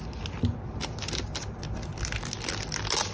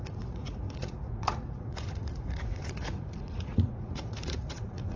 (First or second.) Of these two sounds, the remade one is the second